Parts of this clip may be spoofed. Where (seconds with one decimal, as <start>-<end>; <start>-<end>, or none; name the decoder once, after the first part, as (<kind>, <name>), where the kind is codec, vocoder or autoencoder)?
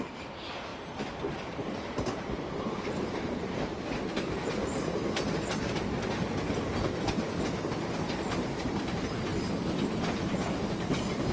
0.0-4.7 (vocoder, BigVGAN v2); 8.6-9.3; 10.1-11.3